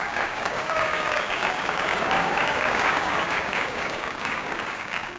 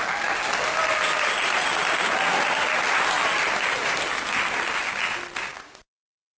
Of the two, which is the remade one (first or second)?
first